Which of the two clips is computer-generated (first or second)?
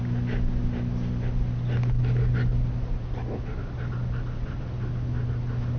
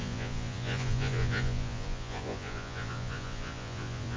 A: second